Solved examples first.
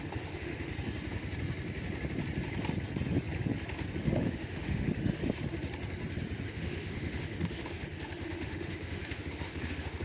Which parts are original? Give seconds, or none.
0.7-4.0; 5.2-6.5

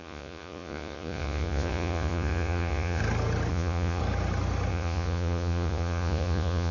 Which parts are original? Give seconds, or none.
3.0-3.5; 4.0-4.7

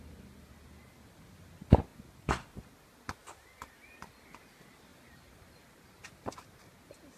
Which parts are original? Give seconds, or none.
0.0-4.9; 6.5-7.2

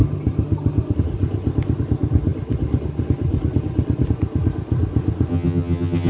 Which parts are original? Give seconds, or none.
0.0-5.3

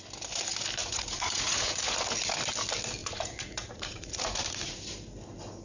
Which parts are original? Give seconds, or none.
0.0-0.8; 2.1-3.0; 4.8-5.6

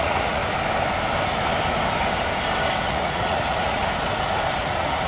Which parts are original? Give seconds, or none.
0.4-2.9; 3.8-4.6